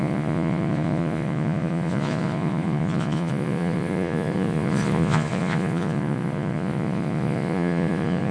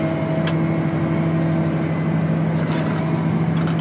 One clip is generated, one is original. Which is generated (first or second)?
first